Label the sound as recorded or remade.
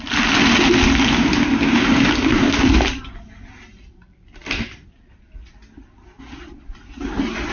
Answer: recorded